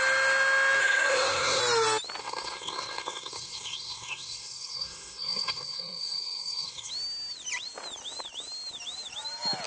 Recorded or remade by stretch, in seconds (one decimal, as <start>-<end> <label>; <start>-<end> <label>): 0.0-0.8 recorded; 0.8-1.6 remade; 1.6-2.2 recorded; 2.2-6.9 remade; 6.9-9.7 recorded